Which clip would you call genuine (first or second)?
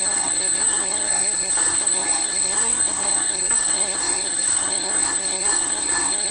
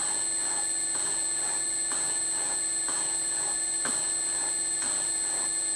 second